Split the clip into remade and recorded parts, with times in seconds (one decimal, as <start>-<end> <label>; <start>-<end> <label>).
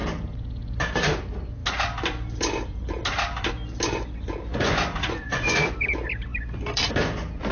0.0-4.5 recorded; 4.5-5.7 remade; 5.7-7.5 recorded